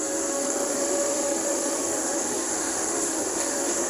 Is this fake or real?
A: fake